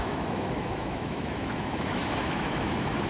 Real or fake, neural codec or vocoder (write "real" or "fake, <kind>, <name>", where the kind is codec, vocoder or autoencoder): fake, autoencoder, DAC-VAE